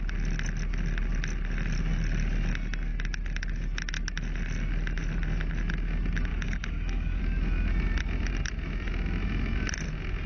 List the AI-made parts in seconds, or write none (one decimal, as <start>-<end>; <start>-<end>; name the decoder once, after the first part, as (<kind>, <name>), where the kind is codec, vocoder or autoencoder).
6.3-7.2 (codec, DAC)

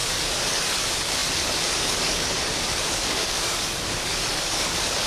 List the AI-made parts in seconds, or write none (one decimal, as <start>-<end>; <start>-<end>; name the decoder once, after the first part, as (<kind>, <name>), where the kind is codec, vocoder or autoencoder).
0.0-5.1 (codec, DAC)

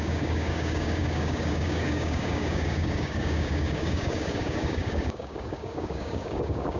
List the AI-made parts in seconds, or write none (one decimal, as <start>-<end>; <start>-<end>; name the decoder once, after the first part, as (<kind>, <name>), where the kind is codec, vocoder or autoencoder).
0.0-6.8 (codec, DAC)

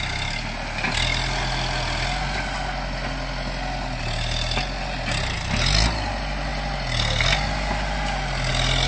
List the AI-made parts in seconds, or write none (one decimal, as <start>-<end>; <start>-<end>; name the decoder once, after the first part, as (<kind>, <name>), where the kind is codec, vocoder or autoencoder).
none

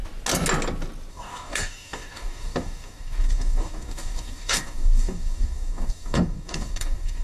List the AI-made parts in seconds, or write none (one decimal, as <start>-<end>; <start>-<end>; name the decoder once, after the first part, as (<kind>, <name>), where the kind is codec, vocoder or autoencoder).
1.1-7.2 (codec, DAC)

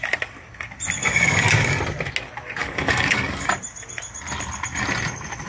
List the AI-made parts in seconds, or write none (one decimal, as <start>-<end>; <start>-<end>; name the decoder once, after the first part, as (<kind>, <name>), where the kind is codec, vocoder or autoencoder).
1.0-1.8 (codec, DAC); 2.6-3.5

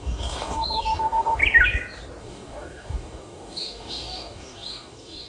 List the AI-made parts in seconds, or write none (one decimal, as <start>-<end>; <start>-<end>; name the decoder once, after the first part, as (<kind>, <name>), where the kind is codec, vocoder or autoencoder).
0.0-1.4 (codec, DAC); 2.2-5.3

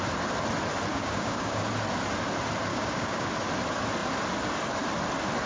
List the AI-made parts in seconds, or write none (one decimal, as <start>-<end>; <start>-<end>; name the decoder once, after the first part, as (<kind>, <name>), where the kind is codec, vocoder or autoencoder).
0.9-1.6 (codec, DAC); 2.7-3.3